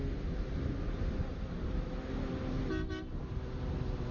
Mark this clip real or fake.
real